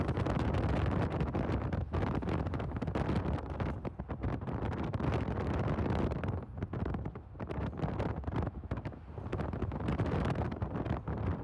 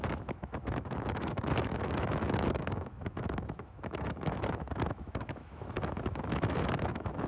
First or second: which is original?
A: first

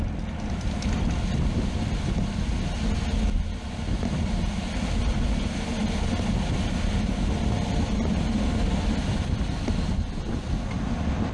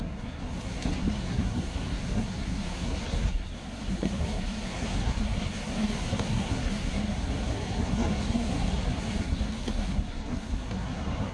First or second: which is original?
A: first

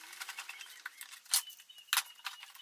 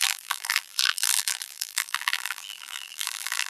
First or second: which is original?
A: first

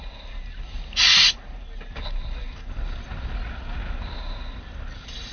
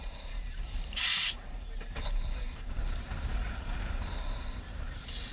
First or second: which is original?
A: first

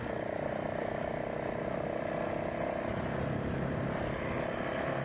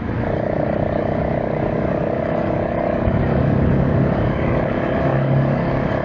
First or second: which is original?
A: first